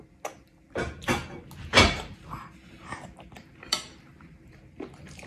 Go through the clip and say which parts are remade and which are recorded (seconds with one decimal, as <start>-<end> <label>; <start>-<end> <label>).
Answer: 0.0-5.3 recorded